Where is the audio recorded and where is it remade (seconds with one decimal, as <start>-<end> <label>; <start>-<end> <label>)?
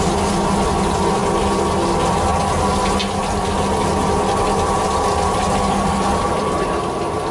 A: 0.0-7.3 recorded